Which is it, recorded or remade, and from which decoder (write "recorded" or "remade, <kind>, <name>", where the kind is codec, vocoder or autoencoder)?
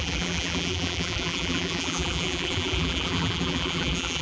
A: remade, vocoder, BigVGAN v2